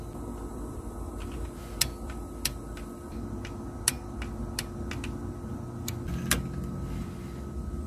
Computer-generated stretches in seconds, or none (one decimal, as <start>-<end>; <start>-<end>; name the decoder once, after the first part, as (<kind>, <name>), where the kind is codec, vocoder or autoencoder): 0.5-1.1 (vocoder, BigVGAN v2)